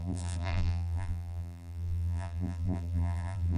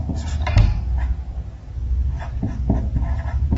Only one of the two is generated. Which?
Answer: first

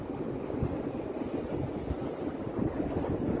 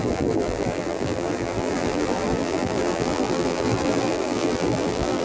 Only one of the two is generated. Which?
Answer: second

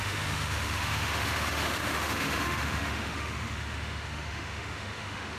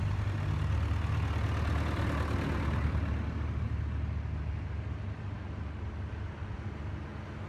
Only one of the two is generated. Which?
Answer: first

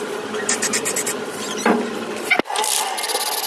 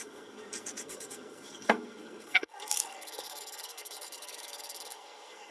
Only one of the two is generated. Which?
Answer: second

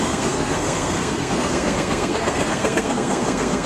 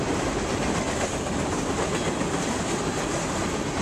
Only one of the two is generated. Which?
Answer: first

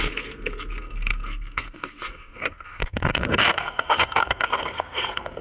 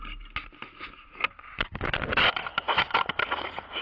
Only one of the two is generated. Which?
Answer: first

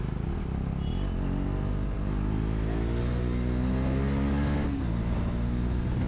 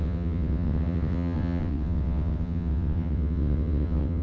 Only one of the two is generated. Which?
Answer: second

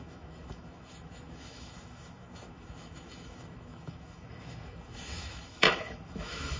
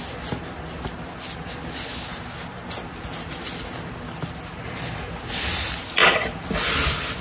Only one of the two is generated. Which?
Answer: first